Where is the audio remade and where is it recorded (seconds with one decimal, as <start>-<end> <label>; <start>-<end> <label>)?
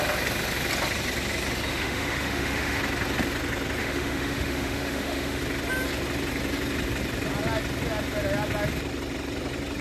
0.0-1.7 recorded; 1.7-2.8 remade; 2.8-3.8 recorded; 3.8-5.4 remade; 5.4-9.8 recorded